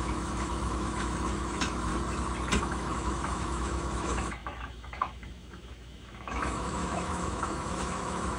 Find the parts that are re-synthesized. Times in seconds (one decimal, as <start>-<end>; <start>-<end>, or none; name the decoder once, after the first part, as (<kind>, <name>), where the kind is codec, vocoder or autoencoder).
0.0-1.9 (autoencoder, DAC-VAE); 2.6-8.4